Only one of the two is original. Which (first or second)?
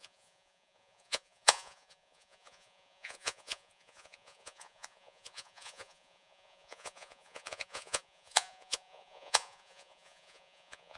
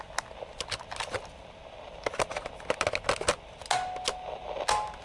second